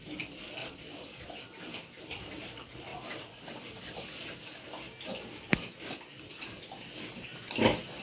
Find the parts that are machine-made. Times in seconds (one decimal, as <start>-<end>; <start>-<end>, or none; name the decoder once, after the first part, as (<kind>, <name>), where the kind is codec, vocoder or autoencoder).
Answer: 0.6-1.4 (vocoder, Vocos)

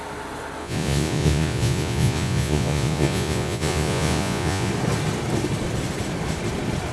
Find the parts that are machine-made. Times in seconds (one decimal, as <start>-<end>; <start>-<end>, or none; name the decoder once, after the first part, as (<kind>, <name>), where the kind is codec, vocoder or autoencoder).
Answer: 0.6-4.7 (vocoder, Vocos)

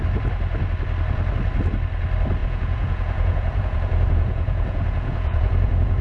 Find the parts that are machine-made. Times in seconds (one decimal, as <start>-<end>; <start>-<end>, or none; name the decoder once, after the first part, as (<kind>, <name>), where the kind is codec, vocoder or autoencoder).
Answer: 2.4-6.0 (vocoder, Vocos)